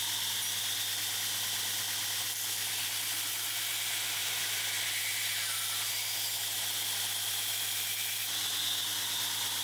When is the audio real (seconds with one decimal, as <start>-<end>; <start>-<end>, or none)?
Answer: 0.0-9.6